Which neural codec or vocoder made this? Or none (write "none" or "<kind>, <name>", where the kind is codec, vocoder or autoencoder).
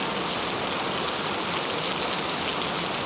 none